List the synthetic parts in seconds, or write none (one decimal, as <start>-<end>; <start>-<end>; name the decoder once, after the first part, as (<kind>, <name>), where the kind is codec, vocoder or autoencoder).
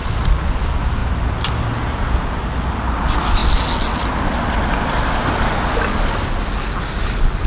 none